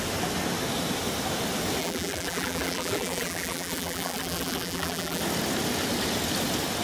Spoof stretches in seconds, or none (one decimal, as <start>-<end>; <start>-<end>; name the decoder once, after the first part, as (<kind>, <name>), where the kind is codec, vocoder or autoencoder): 1.8-5.2 (vocoder, BigVGAN v2)